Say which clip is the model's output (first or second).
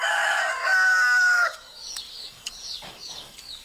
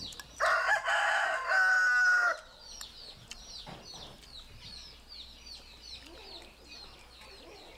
first